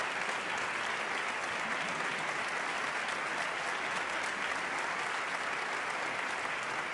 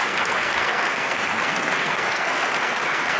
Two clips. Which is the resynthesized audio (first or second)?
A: second